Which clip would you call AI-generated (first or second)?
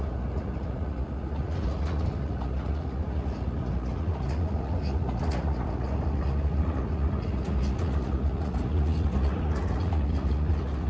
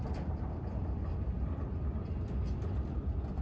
first